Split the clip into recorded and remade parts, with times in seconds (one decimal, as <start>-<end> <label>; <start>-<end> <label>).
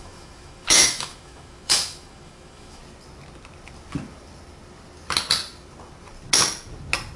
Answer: 0.0-2.8 remade; 2.8-7.2 recorded